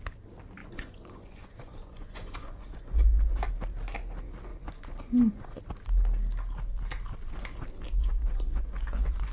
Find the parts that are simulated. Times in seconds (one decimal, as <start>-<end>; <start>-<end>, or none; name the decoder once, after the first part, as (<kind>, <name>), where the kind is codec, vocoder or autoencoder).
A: 0.6-3.5 (vocoder, Vocos); 4.5-5.6; 8.0-9.3